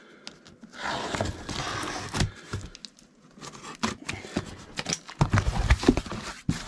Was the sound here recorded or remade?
recorded